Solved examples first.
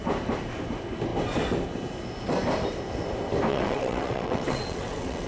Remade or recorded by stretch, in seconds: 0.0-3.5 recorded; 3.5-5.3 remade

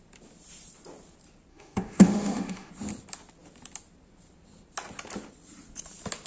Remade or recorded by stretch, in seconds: 0.0-1.5 recorded; 1.5-2.7 remade; 2.7-6.3 recorded

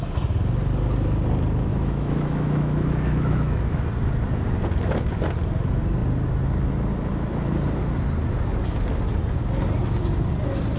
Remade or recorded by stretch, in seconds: 0.0-1.7 recorded; 1.7-3.8 remade; 3.8-10.8 recorded

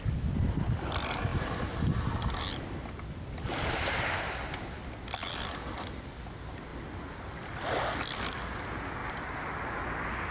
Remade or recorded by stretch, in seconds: 0.0-10.3 recorded

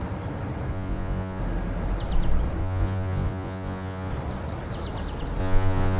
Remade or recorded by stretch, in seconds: 0.0-0.7 recorded; 0.7-1.4 remade; 1.4-2.6 recorded; 2.6-4.1 remade; 4.1-5.4 recorded; 5.4-6.0 remade

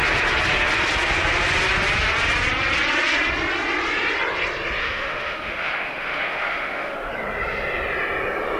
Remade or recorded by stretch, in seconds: 0.0-4.8 recorded; 4.8-7.1 remade; 7.1-8.6 recorded

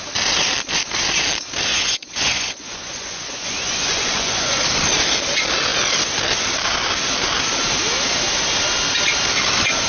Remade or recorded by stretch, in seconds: 0.0-1.7 recorded; 1.7-4.6 remade; 4.6-9.9 recorded

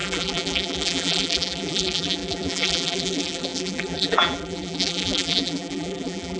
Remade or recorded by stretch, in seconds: 0.0-6.4 remade